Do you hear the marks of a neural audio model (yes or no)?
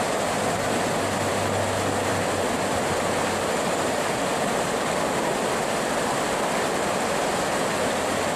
no